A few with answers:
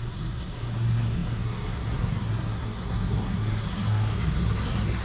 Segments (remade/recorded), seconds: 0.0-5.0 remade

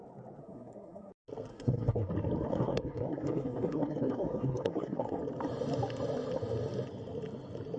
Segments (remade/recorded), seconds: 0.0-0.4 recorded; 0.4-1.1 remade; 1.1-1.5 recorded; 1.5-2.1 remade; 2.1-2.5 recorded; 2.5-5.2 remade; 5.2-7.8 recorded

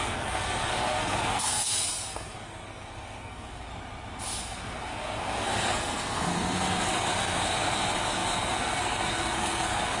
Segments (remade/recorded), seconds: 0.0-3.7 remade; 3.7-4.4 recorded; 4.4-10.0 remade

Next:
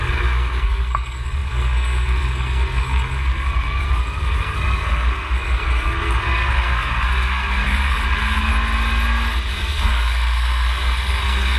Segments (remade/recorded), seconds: 0.0-8.5 remade; 8.5-9.5 recorded; 9.5-11.6 remade

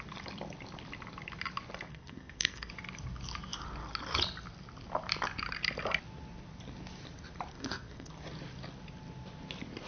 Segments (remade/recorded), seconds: 0.0-1.9 recorded; 1.9-2.7 remade; 2.7-7.5 recorded; 7.5-8.1 remade; 8.1-9.9 recorded

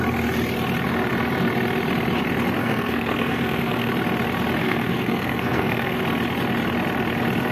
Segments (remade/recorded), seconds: 0.0-2.6 recorded; 2.6-3.9 remade; 3.9-4.6 recorded; 4.6-6.0 remade; 6.0-7.5 recorded